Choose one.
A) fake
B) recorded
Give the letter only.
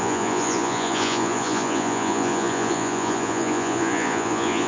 A